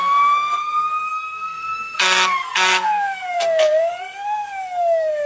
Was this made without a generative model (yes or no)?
no